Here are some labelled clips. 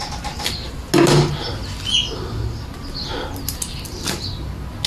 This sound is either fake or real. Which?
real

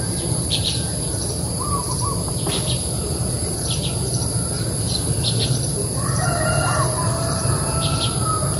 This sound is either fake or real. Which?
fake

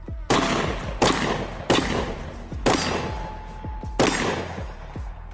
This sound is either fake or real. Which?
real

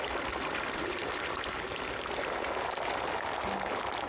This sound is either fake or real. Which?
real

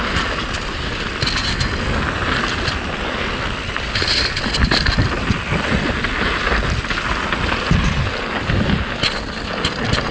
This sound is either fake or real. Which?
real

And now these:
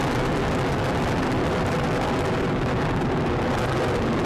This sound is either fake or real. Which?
real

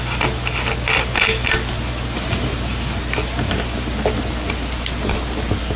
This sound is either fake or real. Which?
real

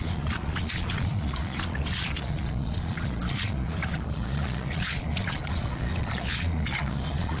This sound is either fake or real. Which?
fake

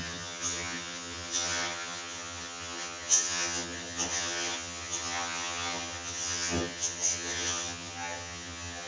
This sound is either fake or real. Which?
fake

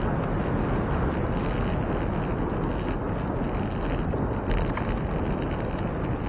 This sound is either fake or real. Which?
real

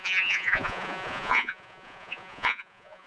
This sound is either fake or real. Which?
fake